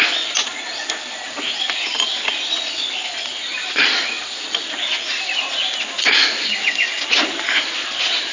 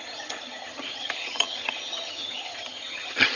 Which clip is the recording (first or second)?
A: first